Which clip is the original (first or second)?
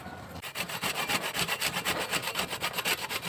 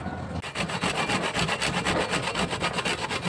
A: second